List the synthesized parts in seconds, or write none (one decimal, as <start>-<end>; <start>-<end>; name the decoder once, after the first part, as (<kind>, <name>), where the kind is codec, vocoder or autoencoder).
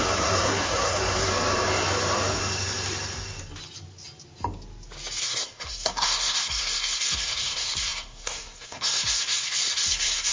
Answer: 0.0-1.3 (codec, SNAC); 5.2-10.3